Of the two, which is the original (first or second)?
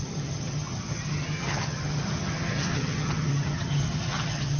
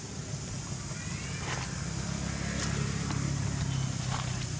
second